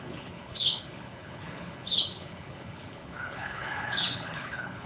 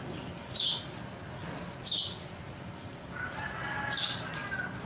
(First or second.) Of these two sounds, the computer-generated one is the first